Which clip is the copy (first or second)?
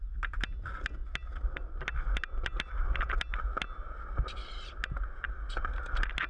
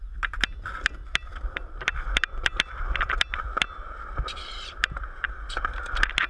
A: second